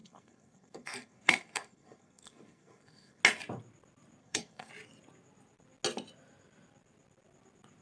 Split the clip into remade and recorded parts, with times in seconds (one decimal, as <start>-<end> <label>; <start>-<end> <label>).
0.0-3.2 remade; 3.2-4.2 recorded; 4.2-4.7 remade; 4.7-7.8 recorded